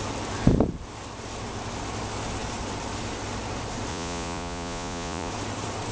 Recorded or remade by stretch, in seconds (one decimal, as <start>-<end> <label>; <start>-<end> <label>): 0.0-3.9 recorded; 3.9-5.3 remade; 5.3-5.9 recorded